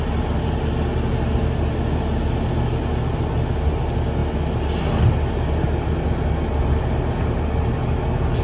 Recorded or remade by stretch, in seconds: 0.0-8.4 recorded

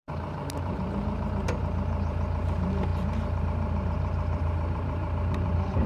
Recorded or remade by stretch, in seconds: 0.0-5.9 remade

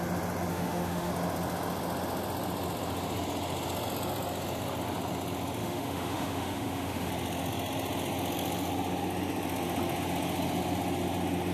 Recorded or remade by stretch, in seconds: 0.0-0.5 recorded; 0.5-1.1 remade; 1.1-5.6 recorded; 5.6-7.1 remade; 7.1-11.5 recorded

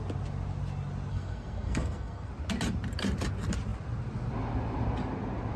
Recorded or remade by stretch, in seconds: 0.0-1.1 recorded; 1.1-2.3 remade; 2.3-5.6 recorded

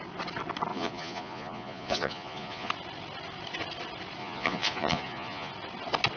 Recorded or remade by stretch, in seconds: 0.0-0.7 recorded; 0.7-2.7 remade; 2.7-4.2 recorded; 4.2-5.5 remade; 5.5-6.2 recorded

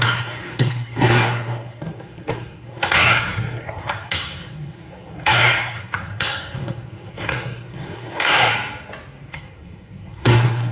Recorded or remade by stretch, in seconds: 0.0-8.5 remade; 8.5-9.3 recorded; 9.3-10.7 remade

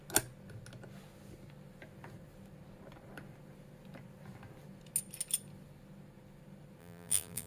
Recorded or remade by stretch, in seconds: 0.0-6.8 recorded; 6.8-7.5 remade